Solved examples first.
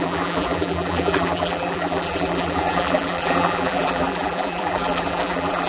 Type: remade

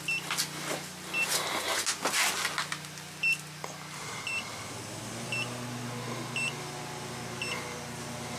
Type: recorded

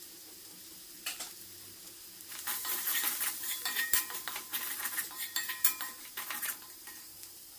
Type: remade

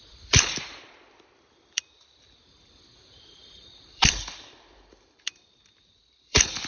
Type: remade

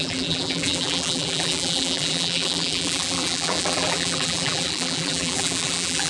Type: remade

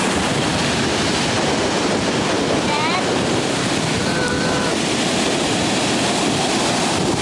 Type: remade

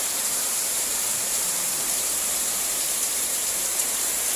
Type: remade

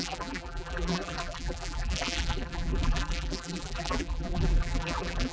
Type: remade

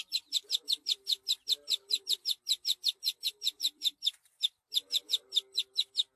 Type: remade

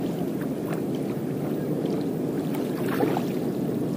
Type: remade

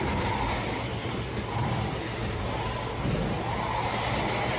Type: recorded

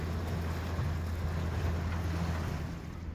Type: recorded